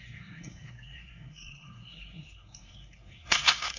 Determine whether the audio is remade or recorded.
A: remade